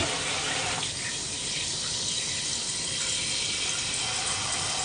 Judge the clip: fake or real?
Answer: real